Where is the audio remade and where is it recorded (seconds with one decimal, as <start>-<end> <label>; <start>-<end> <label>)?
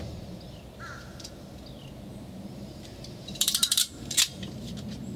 0.0-2.1 recorded; 2.1-4.1 remade; 4.1-5.2 recorded